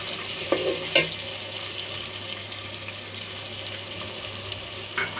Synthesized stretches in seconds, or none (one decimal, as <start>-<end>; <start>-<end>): none